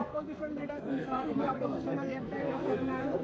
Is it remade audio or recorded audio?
remade